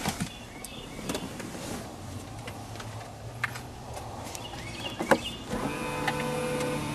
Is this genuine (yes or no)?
yes